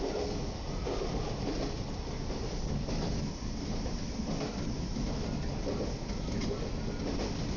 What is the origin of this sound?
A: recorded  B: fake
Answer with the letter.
A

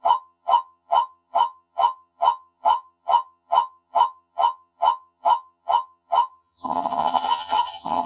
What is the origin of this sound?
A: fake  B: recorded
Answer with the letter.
A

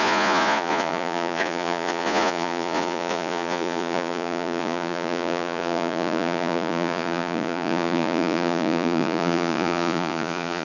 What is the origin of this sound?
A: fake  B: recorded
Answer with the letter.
A